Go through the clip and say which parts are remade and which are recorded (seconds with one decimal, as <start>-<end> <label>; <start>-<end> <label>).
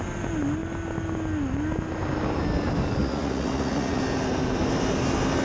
0.0-3.0 recorded; 3.0-4.0 remade; 4.0-5.4 recorded